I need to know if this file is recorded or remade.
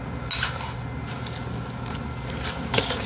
recorded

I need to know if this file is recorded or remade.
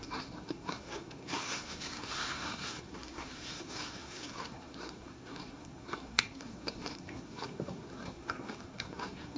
remade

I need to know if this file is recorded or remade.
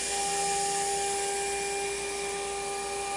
recorded